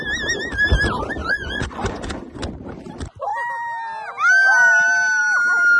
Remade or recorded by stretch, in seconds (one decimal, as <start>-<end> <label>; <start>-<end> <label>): 0.0-1.2 recorded; 1.2-2.4 remade; 2.4-5.8 recorded